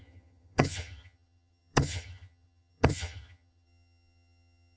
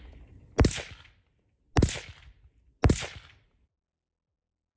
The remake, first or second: first